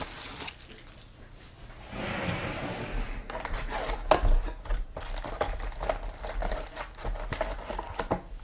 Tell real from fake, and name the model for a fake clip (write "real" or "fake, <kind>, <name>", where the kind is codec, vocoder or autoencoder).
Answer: real